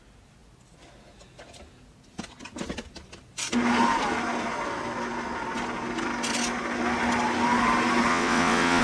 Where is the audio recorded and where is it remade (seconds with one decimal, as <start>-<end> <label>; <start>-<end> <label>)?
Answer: 0.0-8.1 recorded; 8.1-8.8 remade